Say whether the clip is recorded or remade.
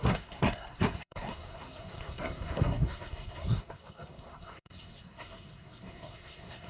remade